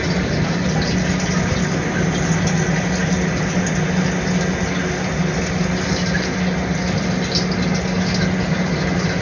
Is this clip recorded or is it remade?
recorded